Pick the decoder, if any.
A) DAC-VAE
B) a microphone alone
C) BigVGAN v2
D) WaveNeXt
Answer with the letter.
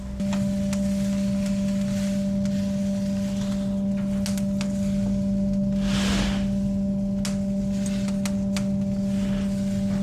B